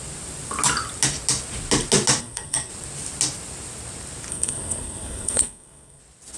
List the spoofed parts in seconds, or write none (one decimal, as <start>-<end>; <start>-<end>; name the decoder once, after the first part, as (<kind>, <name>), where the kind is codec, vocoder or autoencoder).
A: 2.2-2.7 (codec, SNAC); 4.3-6.0